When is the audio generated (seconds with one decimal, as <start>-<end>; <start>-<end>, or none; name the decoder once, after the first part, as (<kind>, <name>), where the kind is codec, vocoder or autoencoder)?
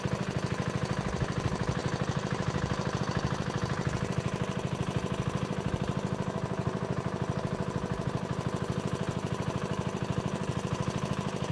none